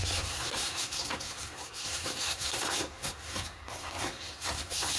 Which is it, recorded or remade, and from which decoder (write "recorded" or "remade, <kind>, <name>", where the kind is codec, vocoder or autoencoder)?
remade, codec, SNAC